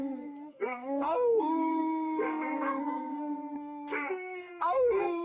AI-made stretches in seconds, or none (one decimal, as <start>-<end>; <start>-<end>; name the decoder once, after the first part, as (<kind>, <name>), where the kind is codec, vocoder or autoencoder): 0.0-5.2 (codec, SNAC)